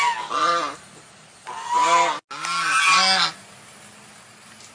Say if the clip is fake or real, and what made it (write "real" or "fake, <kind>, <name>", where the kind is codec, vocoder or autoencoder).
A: real